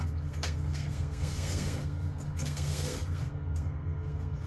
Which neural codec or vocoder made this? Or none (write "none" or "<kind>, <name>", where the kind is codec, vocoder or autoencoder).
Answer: codec, SNAC